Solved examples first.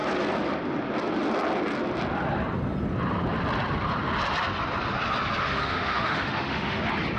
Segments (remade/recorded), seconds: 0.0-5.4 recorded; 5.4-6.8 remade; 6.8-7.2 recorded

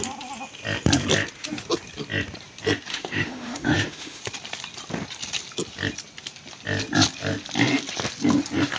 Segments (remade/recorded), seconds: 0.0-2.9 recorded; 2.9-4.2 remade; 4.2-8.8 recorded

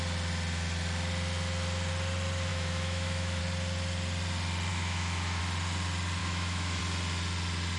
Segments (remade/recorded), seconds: 0.0-2.5 recorded; 2.5-3.4 remade; 3.4-4.7 recorded; 4.7-5.4 remade; 5.4-6.2 recorded; 6.2-6.8 remade; 6.8-7.8 recorded

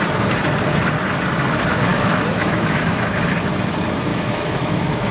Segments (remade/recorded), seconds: 0.0-1.9 recorded; 1.9-3.1 remade; 3.1-4.1 recorded; 4.1-5.1 remade

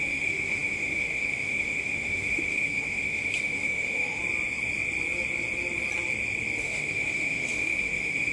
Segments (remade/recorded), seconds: 0.0-4.2 remade; 4.2-6.6 recorded; 6.6-8.3 remade

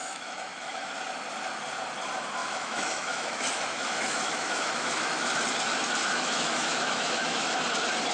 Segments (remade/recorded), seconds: 0.0-0.9 remade; 0.9-2.4 recorded; 2.4-5.3 remade; 5.3-6.0 recorded; 6.0-7.6 remade; 7.6-8.1 recorded

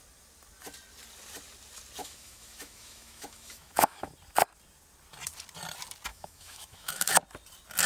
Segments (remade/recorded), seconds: 0.0-2.0 recorded; 2.0-4.1 remade; 4.1-6.1 recorded; 6.1-7.1 remade; 7.1-7.9 recorded